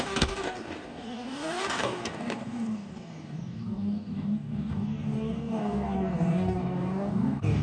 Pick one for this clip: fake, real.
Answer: fake